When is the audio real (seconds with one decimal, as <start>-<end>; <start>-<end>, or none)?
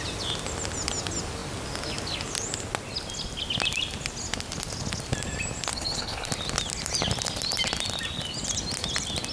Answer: 0.0-5.7; 6.3-9.3